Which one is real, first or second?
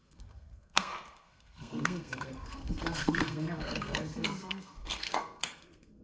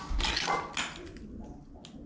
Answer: second